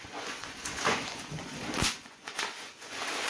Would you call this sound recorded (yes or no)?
no